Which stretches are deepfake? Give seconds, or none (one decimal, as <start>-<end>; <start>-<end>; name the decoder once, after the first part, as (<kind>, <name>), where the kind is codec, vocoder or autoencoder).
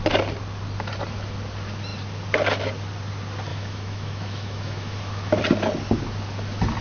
3.5-5.4 (autoencoder, DAC-VAE)